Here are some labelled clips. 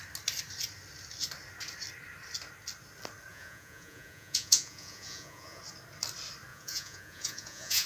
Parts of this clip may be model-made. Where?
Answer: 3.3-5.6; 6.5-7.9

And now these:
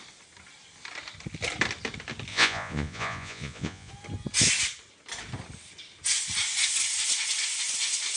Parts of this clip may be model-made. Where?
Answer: 2.3-3.9

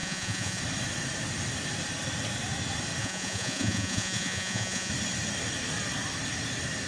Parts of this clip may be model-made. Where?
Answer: 0.0-0.6; 3.0-4.9

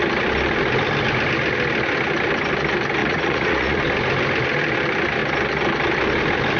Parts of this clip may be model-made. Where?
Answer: 3.0-3.8

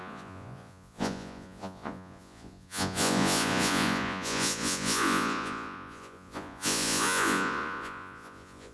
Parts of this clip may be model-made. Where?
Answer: 0.0-8.7

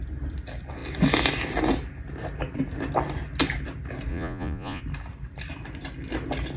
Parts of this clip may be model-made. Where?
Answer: 4.1-4.8

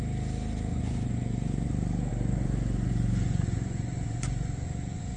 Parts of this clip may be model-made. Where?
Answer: 0.7-1.7; 2.1-5.2

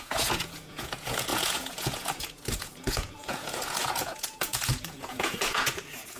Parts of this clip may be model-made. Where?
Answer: 0.0-6.2